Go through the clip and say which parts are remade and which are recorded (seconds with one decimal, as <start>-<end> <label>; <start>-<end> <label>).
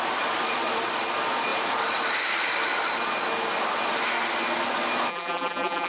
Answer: 0.0-5.1 recorded; 5.1-5.9 remade